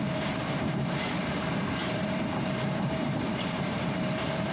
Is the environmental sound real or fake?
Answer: fake